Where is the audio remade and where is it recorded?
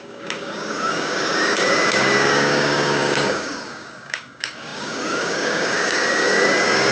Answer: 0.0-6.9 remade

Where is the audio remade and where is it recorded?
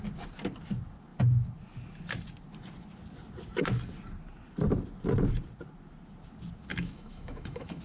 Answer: 0.0-6.7 recorded; 6.7-7.8 remade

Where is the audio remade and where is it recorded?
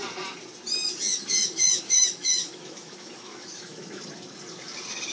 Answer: 0.0-1.1 recorded; 1.1-4.0 remade; 4.0-5.1 recorded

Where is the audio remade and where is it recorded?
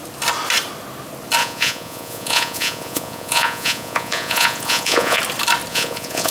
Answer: 0.0-1.4 recorded; 1.4-5.2 remade; 5.2-5.7 recorded; 5.7-6.3 remade